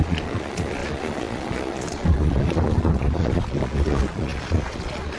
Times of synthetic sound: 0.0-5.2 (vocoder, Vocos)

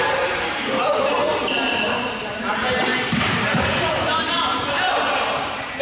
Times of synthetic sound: 0.0-5.8 (vocoder, BigVGAN v2)

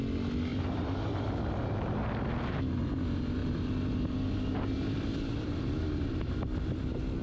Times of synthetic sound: 0.5-2.6 (vocoder, BigVGAN v2); 3.4-6.1

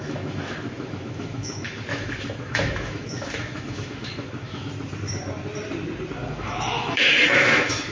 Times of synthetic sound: 0.0-4.7 (autoencoder, DAC-VAE); 6.3-7.9